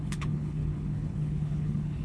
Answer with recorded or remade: remade